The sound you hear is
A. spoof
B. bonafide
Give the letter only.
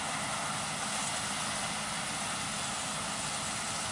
B